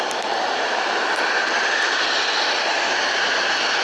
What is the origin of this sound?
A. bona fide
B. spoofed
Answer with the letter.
A